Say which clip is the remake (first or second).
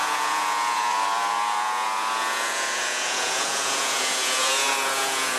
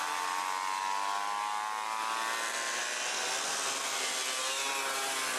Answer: first